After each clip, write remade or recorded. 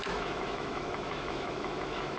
remade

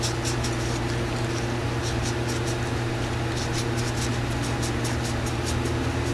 recorded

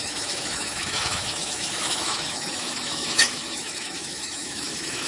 remade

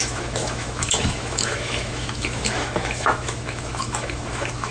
remade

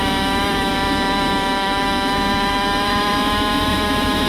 remade